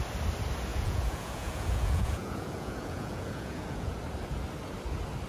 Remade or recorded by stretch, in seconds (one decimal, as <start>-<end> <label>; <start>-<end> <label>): 0.0-0.7 recorded; 0.7-3.9 remade; 3.9-5.3 recorded